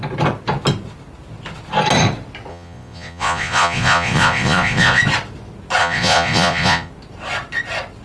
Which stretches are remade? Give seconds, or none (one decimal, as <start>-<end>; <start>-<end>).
2.5-5.0; 5.8-6.9